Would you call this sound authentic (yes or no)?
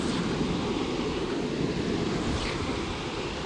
yes